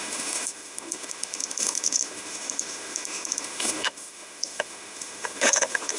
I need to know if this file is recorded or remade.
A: remade